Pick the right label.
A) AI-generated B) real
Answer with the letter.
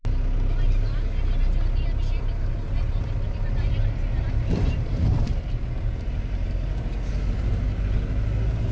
B